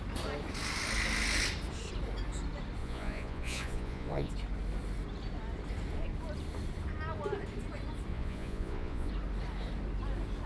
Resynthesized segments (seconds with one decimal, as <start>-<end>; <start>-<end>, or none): 2.8-4.3; 8.1-9.1

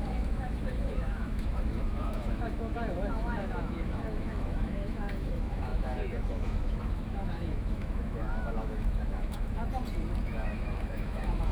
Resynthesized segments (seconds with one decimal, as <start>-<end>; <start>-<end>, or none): 0.0-9.6; 10.2-11.5